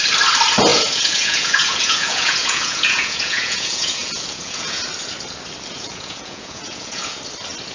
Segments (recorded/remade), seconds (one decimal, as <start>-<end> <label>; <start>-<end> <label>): 0.0-0.7 recorded; 0.7-4.8 remade; 4.8-5.7 recorded; 5.7-7.2 remade; 7.2-7.7 recorded